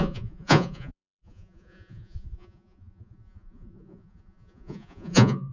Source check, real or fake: fake